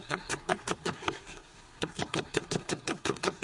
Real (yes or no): no